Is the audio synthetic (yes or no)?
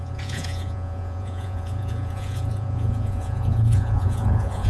yes